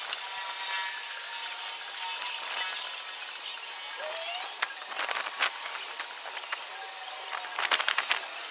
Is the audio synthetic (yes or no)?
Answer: no